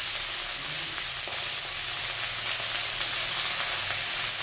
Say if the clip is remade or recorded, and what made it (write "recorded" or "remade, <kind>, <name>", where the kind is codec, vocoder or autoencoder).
recorded